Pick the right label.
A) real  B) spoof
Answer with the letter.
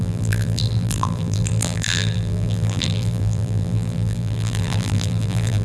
B